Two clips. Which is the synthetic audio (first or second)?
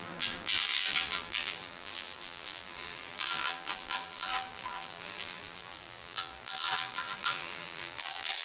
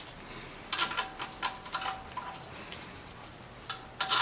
first